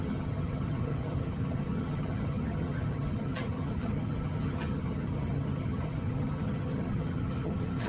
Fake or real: fake